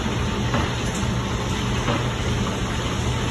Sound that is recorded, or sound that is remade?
recorded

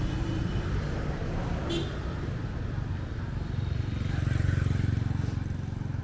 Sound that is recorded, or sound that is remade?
recorded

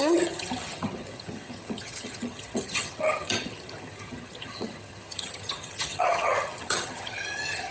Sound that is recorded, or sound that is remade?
remade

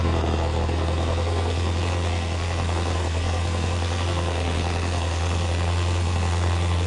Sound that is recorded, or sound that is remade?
remade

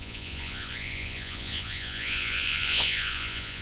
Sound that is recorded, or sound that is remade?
remade